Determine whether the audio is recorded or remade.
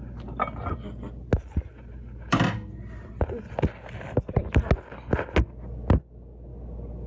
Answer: recorded